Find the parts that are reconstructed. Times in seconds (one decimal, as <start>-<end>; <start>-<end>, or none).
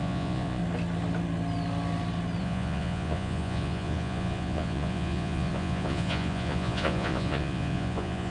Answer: 0.0-0.6; 2.4-8.3